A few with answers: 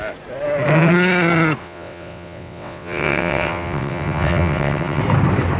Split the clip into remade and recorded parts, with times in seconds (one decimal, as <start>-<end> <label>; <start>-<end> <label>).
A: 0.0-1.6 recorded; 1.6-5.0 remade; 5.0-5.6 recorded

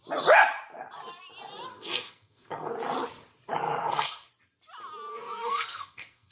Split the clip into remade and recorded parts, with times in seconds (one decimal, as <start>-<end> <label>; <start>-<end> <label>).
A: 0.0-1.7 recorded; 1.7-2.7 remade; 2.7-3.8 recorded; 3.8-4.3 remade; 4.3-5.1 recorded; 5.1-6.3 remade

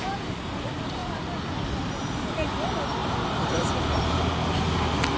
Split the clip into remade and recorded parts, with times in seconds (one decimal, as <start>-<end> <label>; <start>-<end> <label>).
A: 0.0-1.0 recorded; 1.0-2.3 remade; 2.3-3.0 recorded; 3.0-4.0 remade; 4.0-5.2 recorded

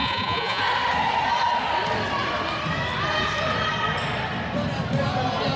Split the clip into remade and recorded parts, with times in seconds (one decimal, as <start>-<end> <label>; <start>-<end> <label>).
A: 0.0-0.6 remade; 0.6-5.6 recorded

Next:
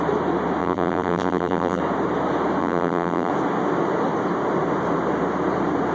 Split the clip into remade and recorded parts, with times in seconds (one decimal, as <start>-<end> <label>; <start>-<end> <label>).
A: 0.0-0.6 recorded; 0.6-1.8 remade; 1.8-2.6 recorded; 2.6-3.3 remade; 3.3-5.9 recorded

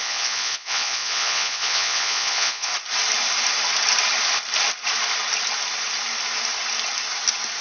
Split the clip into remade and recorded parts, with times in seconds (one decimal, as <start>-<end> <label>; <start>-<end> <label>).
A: 0.0-2.7 remade; 2.7-7.6 recorded

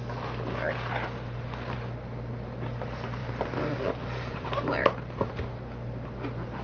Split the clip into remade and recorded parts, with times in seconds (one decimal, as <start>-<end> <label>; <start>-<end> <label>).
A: 0.0-3.2 recorded; 3.2-5.3 remade; 5.3-6.6 recorded

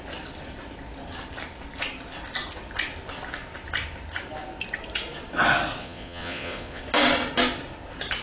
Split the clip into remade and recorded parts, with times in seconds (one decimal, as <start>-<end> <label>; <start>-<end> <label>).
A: 0.0-5.8 recorded; 5.8-6.8 remade; 6.8-8.2 recorded